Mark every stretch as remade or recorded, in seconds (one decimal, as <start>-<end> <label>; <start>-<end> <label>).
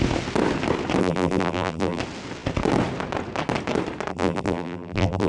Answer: 0.0-1.0 recorded; 1.0-2.0 remade; 2.0-4.1 recorded; 4.1-5.3 remade